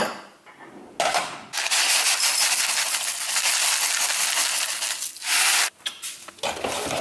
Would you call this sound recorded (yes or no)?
yes